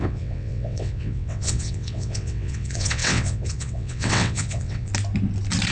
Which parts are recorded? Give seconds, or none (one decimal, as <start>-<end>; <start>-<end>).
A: 4.9-5.7